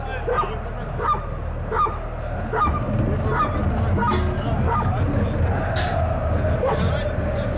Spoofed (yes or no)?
no